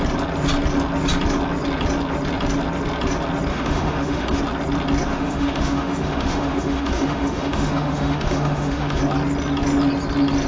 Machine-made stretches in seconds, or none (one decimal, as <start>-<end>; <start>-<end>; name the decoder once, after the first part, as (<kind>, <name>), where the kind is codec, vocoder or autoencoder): 3.5-4.4 (autoencoder, DAC-VAE); 5.1-9.0